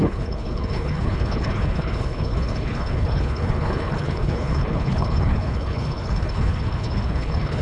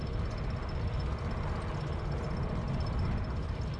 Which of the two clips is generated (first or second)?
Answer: first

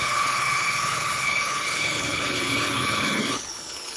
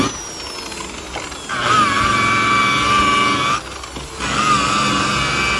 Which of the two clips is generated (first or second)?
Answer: first